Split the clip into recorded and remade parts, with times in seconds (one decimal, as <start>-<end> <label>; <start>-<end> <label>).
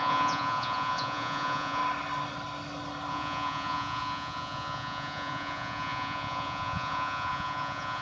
0.0-1.8 remade; 1.8-3.1 recorded; 3.1-8.0 remade